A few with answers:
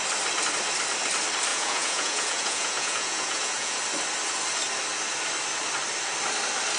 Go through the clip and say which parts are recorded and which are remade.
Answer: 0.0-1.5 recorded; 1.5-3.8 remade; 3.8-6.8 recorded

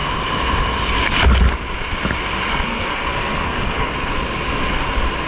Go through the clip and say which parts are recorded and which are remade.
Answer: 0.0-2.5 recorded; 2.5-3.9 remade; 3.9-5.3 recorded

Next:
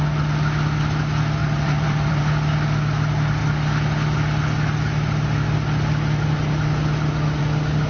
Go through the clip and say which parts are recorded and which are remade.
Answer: 0.0-1.4 recorded; 1.4-2.2 remade; 2.2-7.9 recorded

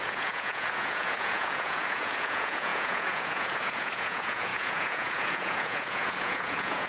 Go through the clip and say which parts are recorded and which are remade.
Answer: 0.0-6.9 remade

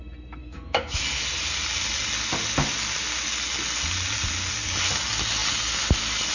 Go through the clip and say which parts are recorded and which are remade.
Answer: 0.0-0.4 recorded; 0.4-1.0 remade; 1.0-6.3 recorded

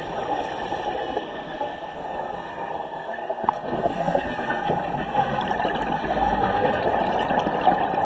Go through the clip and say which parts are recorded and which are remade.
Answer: 0.0-1.0 recorded; 1.0-5.4 remade; 5.4-6.0 recorded; 6.0-6.8 remade; 6.8-8.0 recorded

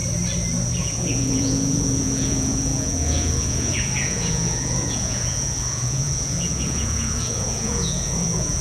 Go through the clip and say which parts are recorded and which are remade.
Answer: 0.0-0.8 recorded; 0.8-8.6 remade

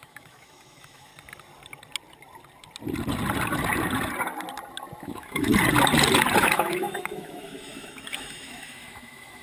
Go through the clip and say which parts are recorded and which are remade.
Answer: 0.0-1.1 remade; 1.1-5.0 recorded; 5.0-5.5 remade; 5.5-6.4 recorded; 6.4-9.4 remade